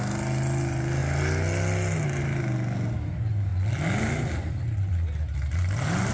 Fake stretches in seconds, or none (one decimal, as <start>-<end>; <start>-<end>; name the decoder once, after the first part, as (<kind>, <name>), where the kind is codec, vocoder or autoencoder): none